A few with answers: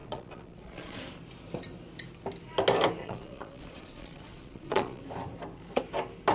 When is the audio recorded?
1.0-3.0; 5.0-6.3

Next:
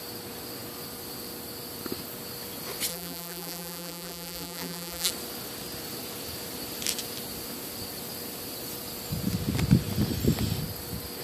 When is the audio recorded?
0.0-2.9; 5.1-11.2

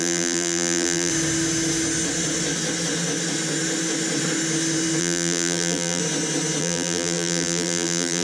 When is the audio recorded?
1.1-5.0; 6.0-6.6

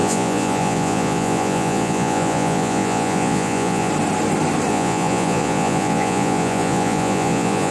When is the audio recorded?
3.9-4.7

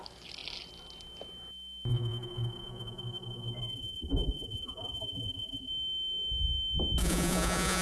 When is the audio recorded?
0.0-1.9; 5.7-7.0

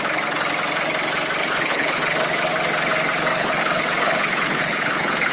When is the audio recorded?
0.0-1.4; 2.0-3.3

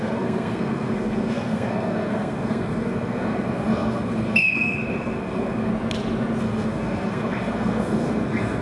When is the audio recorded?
5.7-6.4

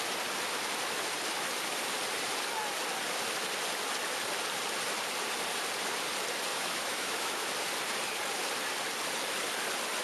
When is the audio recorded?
0.0-6.5; 7.5-10.0